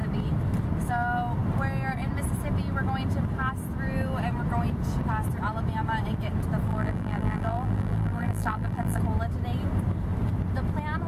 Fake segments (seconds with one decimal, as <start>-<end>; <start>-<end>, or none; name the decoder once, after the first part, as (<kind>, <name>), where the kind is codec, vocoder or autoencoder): 6.7-9.0 (vocoder, BigVGAN v2)